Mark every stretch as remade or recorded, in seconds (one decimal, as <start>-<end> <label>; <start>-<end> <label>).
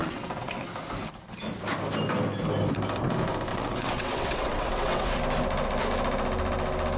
0.0-0.6 remade; 0.6-3.5 recorded; 3.5-5.2 remade; 5.2-7.0 recorded